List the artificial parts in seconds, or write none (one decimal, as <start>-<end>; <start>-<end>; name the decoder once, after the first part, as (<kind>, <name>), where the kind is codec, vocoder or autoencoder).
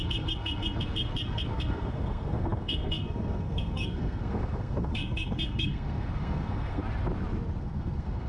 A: 0.0-6.8 (codec, SNAC); 7.6-8.3